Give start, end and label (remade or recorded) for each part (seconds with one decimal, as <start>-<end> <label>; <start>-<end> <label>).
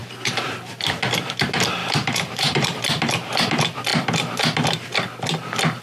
0.0-0.5 remade; 0.5-1.8 recorded; 1.8-2.8 remade; 2.8-5.8 recorded